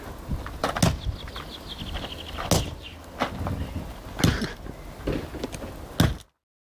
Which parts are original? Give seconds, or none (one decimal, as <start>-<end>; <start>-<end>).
0.0-6.8